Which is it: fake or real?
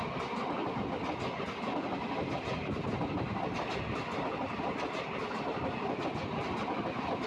real